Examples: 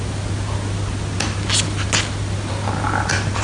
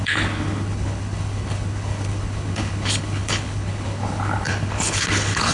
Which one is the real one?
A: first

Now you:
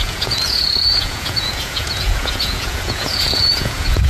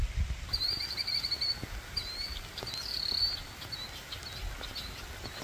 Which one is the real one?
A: second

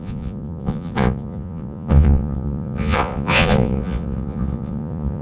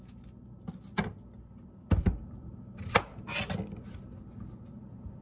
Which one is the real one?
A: second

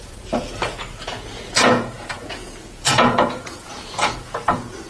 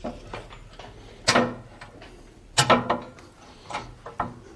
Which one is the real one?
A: second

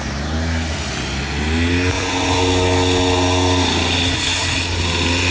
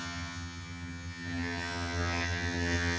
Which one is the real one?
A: first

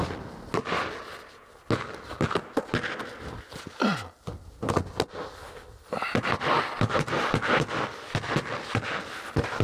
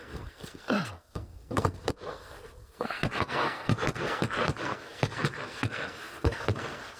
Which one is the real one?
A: first